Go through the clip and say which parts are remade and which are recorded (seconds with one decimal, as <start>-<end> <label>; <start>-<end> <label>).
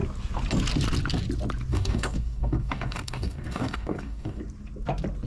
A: 0.0-1.7 recorded; 1.7-4.4 remade; 4.4-5.3 recorded